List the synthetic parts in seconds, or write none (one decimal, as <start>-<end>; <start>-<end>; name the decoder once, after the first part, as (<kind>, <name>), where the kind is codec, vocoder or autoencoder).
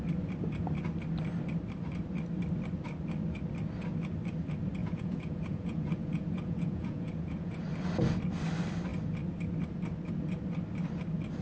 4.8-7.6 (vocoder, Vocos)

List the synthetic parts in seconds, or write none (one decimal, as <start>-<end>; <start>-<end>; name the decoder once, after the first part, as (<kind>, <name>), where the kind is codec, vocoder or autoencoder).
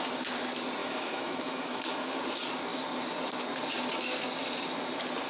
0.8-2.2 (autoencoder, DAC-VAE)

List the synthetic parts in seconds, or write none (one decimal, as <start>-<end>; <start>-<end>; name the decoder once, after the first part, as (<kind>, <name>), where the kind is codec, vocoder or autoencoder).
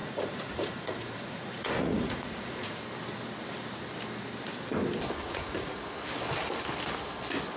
0.0-2.8 (vocoder, Vocos); 5.2-5.8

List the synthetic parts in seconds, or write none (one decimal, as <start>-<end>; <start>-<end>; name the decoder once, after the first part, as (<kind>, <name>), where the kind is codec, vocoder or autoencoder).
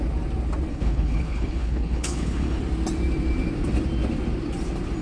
0.7-2.6 (codec, HILCodec)